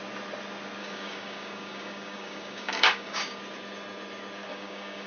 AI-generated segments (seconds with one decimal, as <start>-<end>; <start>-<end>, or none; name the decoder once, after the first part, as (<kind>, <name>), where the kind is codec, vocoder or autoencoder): 0.8-3.4 (codec, DAC); 4.5-5.1